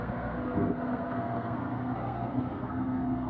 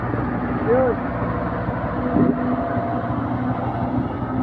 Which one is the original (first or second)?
second